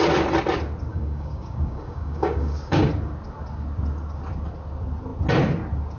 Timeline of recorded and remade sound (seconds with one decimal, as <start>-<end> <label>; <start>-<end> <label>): 0.0-0.9 recorded; 0.9-2.9 remade; 2.9-6.0 recorded